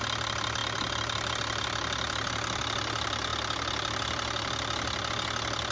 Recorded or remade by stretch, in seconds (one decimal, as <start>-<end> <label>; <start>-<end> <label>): 0.0-5.7 recorded